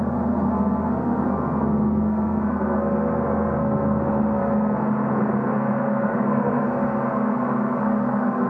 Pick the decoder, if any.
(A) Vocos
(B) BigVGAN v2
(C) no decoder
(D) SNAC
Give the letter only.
D